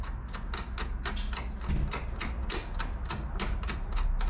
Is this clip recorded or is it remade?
recorded